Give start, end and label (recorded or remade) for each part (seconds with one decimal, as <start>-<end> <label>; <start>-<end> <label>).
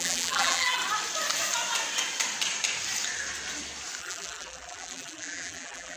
0.0-0.8 remade; 0.8-4.0 recorded; 4.0-6.0 remade